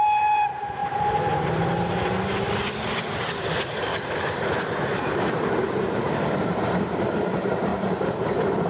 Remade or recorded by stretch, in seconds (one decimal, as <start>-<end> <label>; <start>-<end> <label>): 0.0-0.8 recorded; 0.8-1.8 remade; 1.8-3.9 recorded; 3.9-7.0 remade; 7.0-7.7 recorded; 7.7-8.7 remade